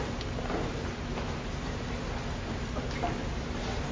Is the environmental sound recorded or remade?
recorded